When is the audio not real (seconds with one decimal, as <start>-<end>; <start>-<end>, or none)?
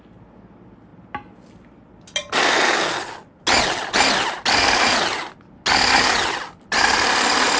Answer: none